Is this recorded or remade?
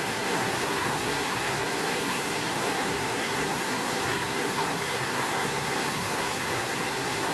remade